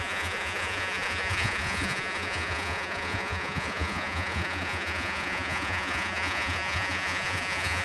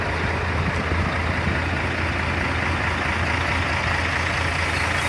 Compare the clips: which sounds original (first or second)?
second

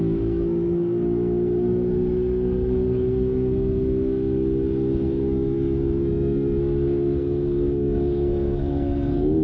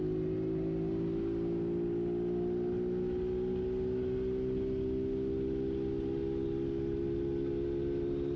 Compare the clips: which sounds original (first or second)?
second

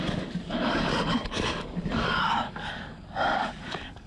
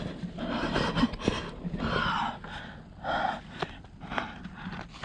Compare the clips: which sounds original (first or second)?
second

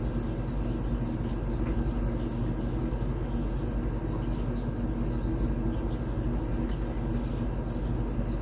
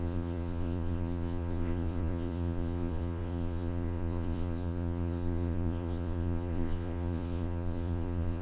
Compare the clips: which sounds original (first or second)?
first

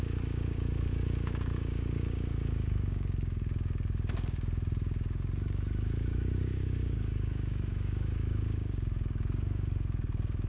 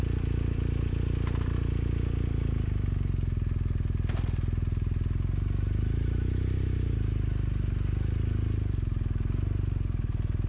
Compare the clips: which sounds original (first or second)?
second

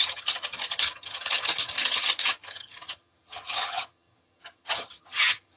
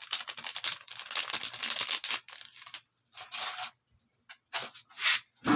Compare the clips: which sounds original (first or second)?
second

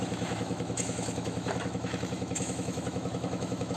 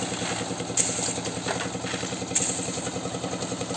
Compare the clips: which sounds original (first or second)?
second